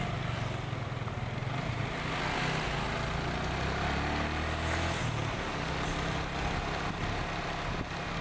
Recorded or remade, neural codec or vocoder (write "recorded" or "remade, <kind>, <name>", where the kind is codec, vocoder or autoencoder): recorded